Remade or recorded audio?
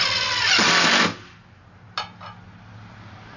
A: recorded